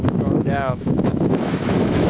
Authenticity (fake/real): fake